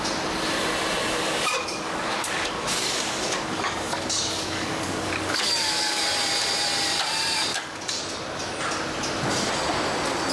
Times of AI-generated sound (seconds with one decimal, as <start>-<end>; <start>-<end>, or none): 1.0-6.0; 7.5-8.0